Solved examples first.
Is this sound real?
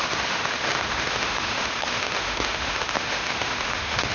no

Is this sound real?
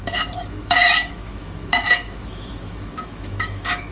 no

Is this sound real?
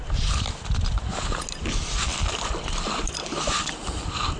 yes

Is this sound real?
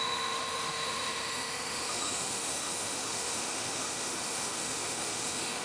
no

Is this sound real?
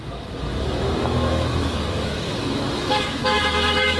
no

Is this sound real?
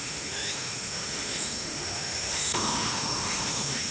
no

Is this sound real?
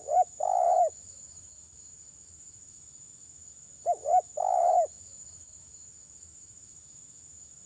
no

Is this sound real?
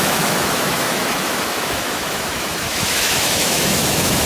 no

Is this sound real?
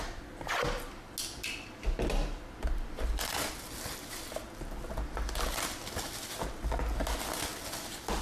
yes